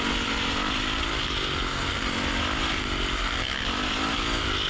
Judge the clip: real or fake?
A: real